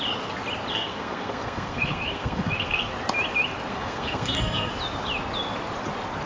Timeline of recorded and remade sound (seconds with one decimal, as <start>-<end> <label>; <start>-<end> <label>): 0.0-0.7 recorded; 0.7-2.9 remade; 2.9-3.7 recorded; 3.7-4.7 remade; 4.7-6.3 recorded

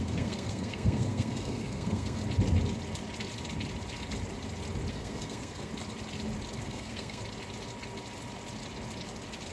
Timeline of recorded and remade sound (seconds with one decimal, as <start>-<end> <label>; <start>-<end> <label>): 0.0-2.2 remade; 2.2-4.9 recorded; 4.9-5.7 remade; 5.7-6.6 recorded; 6.6-7.2 remade; 7.2-9.5 recorded

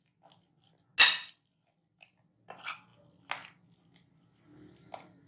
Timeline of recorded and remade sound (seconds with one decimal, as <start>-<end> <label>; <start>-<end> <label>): 0.0-5.3 recorded

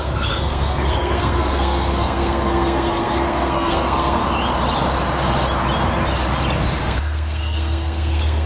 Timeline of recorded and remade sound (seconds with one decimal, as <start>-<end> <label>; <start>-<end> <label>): 0.0-4.2 remade; 4.2-6.8 recorded; 6.8-8.5 remade